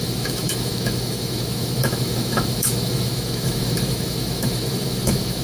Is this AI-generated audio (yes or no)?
yes